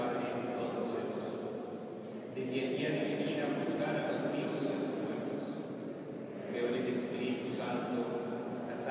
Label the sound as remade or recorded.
recorded